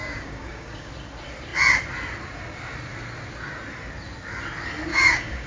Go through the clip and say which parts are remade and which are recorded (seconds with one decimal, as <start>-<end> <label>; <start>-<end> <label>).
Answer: 0.0-0.9 remade; 0.9-4.9 recorded; 4.9-5.5 remade